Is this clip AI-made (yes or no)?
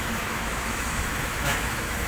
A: yes